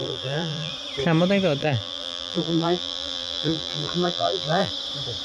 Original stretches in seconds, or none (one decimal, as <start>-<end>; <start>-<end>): 0.7-1.6; 4.7-5.2